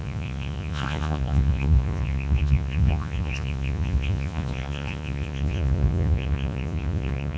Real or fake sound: fake